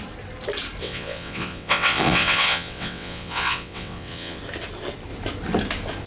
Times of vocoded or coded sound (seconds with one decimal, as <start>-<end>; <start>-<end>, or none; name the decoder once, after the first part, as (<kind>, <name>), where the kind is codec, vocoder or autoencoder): 0.8-4.4 (vocoder, WaveNeXt)